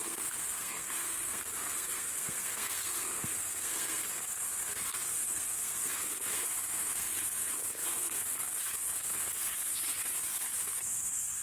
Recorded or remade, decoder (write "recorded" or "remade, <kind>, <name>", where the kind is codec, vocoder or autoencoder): remade, codec, SNAC